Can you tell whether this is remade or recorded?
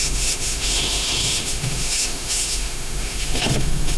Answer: remade